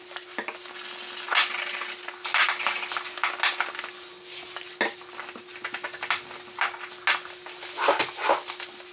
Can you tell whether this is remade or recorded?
recorded